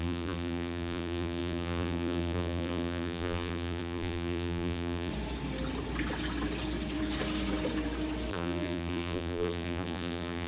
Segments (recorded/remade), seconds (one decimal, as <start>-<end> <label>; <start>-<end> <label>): 0.0-5.1 remade; 5.1-8.3 recorded; 8.3-10.5 remade